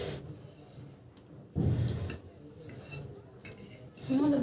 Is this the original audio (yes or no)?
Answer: yes